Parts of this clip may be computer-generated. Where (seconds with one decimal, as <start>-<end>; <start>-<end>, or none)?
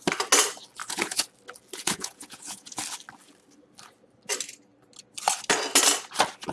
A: 0.8-1.3; 1.8-2.8